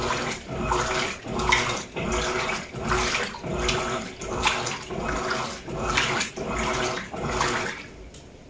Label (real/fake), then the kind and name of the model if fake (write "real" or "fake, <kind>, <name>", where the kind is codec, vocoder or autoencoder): real